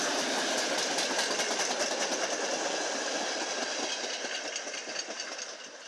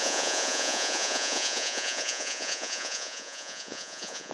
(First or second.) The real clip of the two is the first